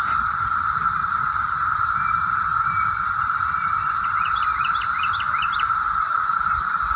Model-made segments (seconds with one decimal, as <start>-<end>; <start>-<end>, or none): none